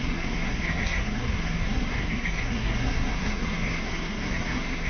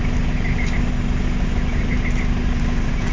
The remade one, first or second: first